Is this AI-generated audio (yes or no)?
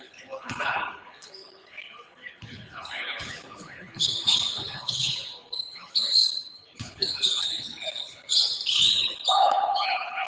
yes